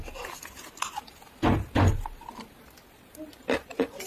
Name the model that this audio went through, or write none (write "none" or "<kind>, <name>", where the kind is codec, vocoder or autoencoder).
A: none